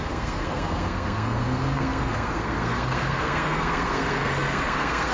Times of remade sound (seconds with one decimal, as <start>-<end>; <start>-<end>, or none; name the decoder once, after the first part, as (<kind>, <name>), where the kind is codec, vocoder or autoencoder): 0.0-5.1 (codec, SNAC)